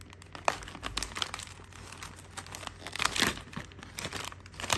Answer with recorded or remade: recorded